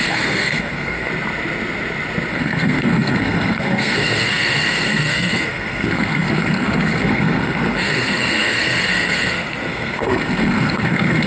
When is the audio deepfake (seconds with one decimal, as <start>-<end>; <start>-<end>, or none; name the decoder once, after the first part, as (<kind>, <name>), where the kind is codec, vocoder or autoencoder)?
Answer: 0.0-1.1 (codec, SNAC); 2.3-11.3